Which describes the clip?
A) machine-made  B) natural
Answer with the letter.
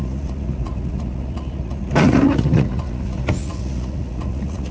A